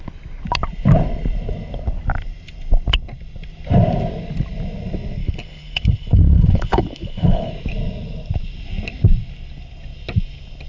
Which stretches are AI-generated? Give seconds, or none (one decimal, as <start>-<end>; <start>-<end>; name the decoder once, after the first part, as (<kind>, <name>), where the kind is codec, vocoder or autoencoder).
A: 5.2-7.5 (codec, HILCodec)